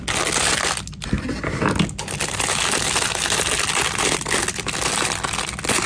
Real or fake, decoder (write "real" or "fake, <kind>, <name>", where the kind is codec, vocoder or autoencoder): real